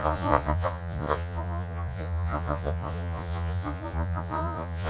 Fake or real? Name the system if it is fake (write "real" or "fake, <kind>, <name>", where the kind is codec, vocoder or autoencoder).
fake, vocoder, Vocos